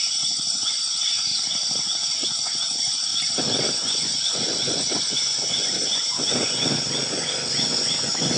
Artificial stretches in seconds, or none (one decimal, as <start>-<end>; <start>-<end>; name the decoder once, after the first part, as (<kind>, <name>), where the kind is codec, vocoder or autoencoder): 0.0-1.3 (vocoder, Vocos); 2.1-3.1; 3.7-8.4